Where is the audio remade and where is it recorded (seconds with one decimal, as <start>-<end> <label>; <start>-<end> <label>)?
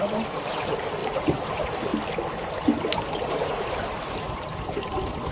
0.0-1.9 remade; 1.9-3.3 recorded; 3.3-4.5 remade; 4.5-5.3 recorded